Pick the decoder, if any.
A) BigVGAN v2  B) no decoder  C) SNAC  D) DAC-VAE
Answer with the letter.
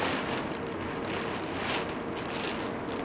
B